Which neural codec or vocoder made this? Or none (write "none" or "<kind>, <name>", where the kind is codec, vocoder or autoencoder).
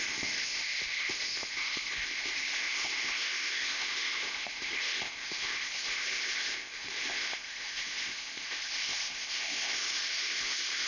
codec, ZipCodec